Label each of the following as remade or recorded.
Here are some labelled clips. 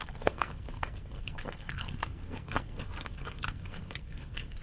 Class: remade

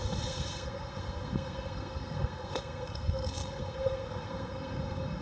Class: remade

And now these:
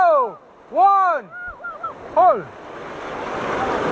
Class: recorded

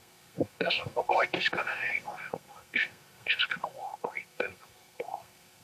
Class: remade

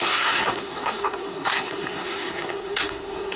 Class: remade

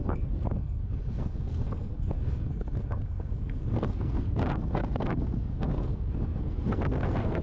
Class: remade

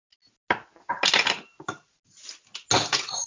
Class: recorded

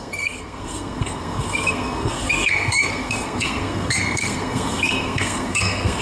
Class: remade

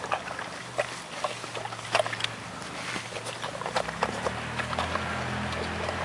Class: recorded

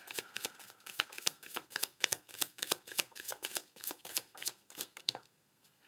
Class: remade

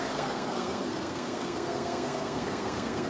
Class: remade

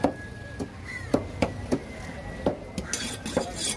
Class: recorded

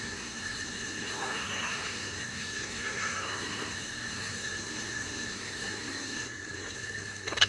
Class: remade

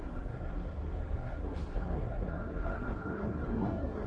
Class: remade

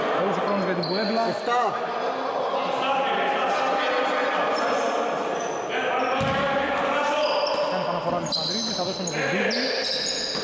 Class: recorded